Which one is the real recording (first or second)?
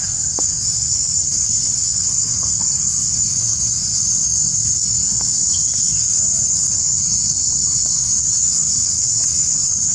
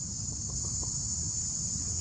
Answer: second